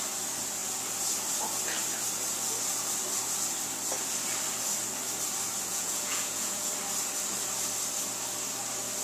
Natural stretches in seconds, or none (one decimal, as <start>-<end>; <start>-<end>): 0.0-5.7; 6.7-9.0